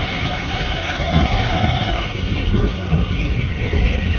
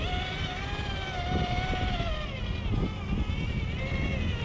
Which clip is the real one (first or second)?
second